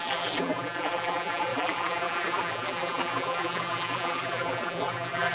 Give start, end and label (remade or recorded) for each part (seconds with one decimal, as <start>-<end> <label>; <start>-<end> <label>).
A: 0.0-5.3 remade